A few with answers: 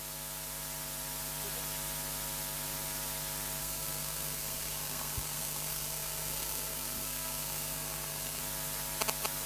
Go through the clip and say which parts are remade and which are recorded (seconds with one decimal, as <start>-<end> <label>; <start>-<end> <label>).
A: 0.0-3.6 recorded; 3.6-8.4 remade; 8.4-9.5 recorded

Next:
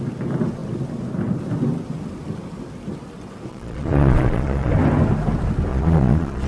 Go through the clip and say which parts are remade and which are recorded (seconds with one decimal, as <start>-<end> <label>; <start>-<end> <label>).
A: 0.0-3.5 recorded; 3.5-4.7 remade; 4.7-5.7 recorded; 5.7-6.5 remade

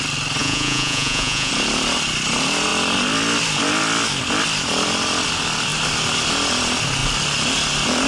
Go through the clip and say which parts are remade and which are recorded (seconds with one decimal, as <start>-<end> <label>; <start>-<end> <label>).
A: 0.0-0.4 recorded; 0.4-1.5 remade; 1.5-8.1 recorded

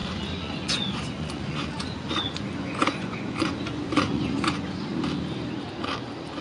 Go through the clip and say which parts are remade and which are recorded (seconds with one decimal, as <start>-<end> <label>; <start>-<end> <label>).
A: 0.0-4.9 remade; 4.9-6.4 recorded

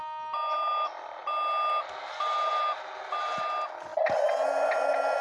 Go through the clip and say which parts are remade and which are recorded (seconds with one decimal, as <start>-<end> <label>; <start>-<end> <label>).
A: 0.0-5.2 recorded

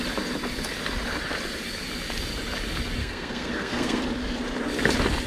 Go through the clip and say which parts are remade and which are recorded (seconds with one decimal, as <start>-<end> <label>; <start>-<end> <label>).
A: 0.0-3.0 recorded; 3.0-4.0 remade; 4.0-5.3 recorded

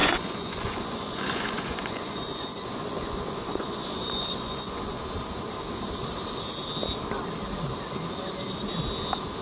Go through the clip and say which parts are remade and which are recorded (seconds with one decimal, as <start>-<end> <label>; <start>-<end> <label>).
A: 0.0-5.0 remade; 5.0-9.4 recorded

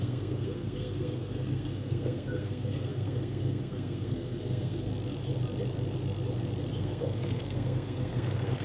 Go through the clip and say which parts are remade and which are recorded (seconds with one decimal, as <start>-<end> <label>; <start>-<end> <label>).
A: 0.0-4.9 remade; 4.9-6.8 recorded; 6.8-8.6 remade